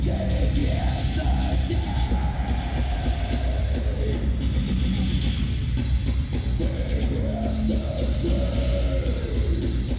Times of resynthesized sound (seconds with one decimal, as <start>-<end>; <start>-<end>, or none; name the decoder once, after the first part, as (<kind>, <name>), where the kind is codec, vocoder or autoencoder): none